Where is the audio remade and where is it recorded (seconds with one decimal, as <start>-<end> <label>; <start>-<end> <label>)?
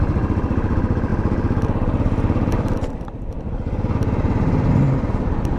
0.0-5.6 recorded